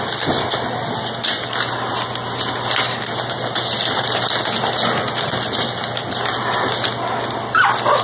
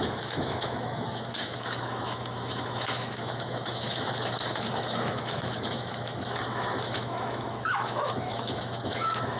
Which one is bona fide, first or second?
first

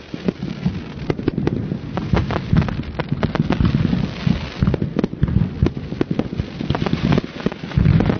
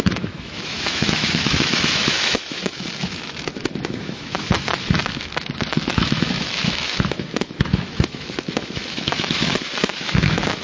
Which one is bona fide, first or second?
first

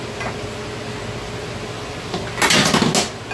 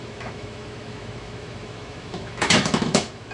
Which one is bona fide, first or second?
first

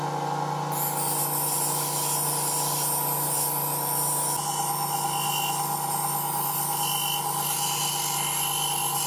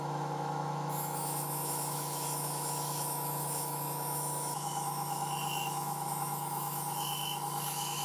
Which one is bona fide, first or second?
first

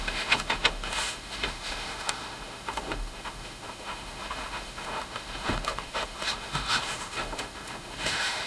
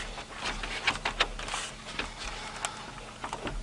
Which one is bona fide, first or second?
second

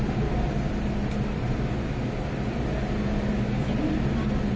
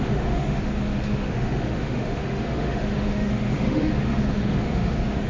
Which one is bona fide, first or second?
first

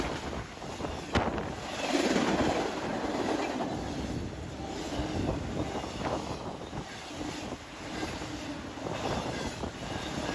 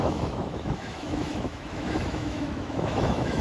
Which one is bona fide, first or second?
first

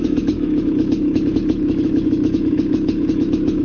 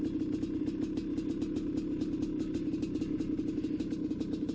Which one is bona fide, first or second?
second